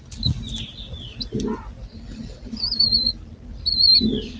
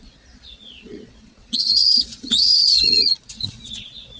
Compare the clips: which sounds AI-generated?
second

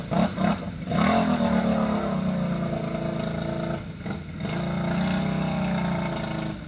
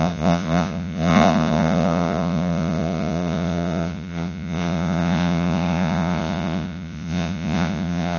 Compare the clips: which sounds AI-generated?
second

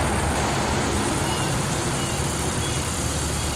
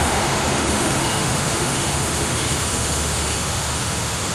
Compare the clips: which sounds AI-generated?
second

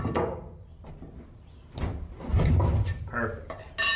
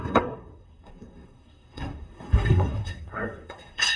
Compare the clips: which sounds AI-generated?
second